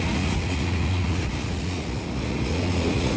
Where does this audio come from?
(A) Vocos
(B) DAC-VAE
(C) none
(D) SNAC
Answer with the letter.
A